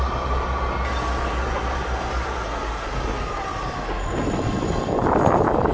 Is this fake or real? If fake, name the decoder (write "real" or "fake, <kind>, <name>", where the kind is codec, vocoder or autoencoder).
real